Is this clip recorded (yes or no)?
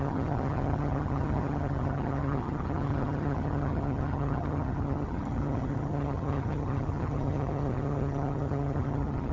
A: no